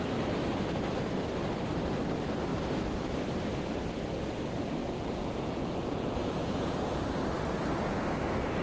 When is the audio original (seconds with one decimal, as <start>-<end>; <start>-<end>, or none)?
0.0-4.8; 7.0-8.6